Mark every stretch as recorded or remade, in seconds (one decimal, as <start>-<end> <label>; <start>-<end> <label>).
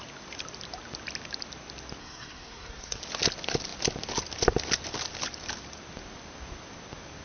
0.0-2.0 recorded; 2.0-3.0 remade; 3.0-7.2 recorded